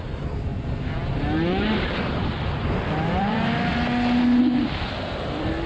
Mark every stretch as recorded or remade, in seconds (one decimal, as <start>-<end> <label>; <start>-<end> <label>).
0.0-0.5 remade; 0.5-1.1 recorded; 1.1-3.7 remade; 3.7-4.4 recorded; 4.4-5.7 remade